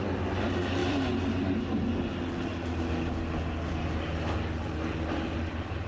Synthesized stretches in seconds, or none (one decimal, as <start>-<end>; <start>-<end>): none